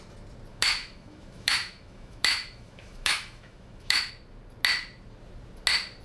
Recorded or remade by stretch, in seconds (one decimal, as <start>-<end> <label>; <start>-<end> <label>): 0.0-0.5 recorded; 0.5-4.1 remade; 4.1-6.0 recorded

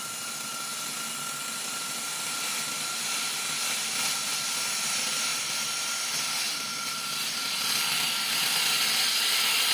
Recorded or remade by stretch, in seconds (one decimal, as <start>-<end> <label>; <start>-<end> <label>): 0.0-0.7 remade; 0.7-2.7 recorded; 2.7-9.7 remade

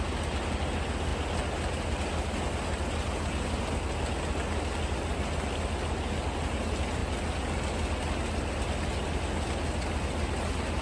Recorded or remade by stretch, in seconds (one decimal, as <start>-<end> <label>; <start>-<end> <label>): 0.0-10.8 recorded

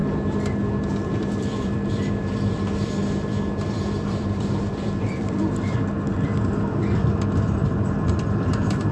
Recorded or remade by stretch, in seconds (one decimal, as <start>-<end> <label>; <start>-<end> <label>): 0.0-0.8 recorded; 0.8-8.9 remade